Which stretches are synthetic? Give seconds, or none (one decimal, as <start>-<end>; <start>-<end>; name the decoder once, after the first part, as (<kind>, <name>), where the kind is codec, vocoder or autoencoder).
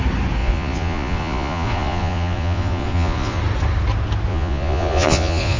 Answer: 0.4-3.4 (vocoder, Vocos); 4.3-5.6